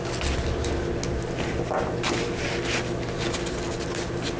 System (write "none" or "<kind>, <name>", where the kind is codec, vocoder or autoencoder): none